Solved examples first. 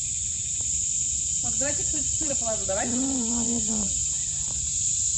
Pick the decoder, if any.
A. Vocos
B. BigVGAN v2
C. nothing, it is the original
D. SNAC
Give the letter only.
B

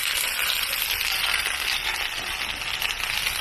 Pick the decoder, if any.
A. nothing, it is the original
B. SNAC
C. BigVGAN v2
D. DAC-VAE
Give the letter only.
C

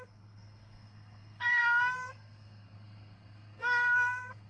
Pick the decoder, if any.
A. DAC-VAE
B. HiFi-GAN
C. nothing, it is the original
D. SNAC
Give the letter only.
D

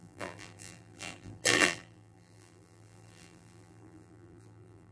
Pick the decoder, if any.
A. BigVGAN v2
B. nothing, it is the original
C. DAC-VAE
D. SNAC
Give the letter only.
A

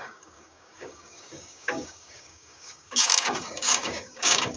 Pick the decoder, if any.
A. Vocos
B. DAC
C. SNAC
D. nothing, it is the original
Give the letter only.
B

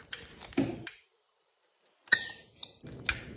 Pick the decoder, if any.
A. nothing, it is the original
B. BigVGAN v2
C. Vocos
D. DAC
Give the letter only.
A